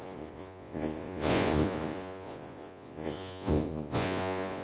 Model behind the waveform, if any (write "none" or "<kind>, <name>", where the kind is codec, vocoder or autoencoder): vocoder, Vocos